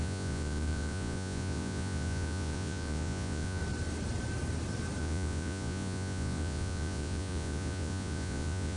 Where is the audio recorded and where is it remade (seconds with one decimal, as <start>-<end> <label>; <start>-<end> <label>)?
0.0-3.6 remade; 3.6-5.0 recorded; 5.0-8.8 remade